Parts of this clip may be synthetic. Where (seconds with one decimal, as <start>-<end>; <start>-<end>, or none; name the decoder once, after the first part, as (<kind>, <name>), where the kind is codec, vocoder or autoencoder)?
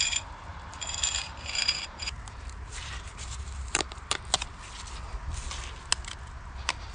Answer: 0.5-2.2 (vocoder, BigVGAN v2); 2.8-4.2